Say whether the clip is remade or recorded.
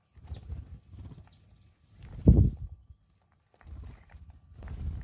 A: recorded